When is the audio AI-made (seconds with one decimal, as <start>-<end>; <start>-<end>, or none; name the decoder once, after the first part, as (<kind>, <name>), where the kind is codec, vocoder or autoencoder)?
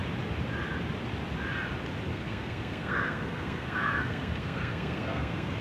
2.1-5.6 (codec, SNAC)